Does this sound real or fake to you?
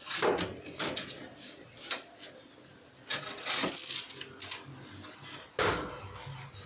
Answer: real